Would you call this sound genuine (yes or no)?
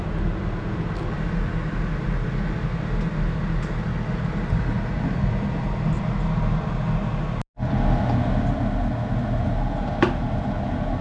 yes